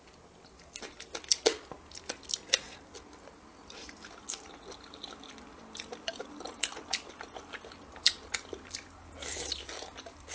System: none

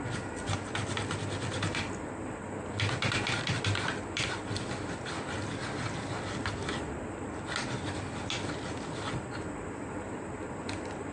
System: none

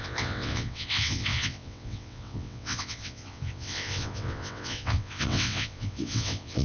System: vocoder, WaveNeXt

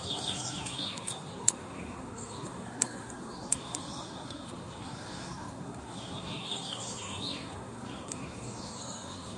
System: codec, SNAC